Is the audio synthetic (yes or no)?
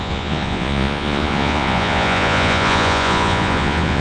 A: yes